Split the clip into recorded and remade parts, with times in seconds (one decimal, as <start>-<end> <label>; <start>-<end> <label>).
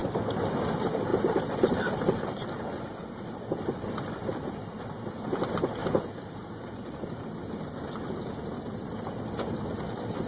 0.0-10.3 recorded